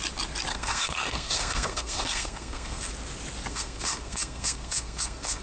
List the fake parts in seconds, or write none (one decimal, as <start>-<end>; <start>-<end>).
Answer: 0.5-2.9; 3.5-5.4